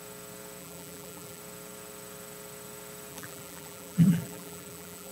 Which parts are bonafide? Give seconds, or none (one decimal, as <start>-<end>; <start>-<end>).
0.0-0.6; 1.4-3.1